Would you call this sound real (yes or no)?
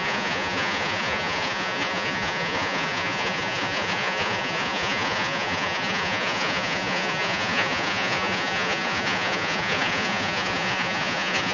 no